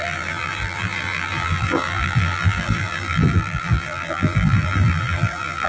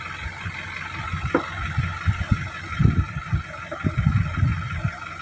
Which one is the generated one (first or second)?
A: first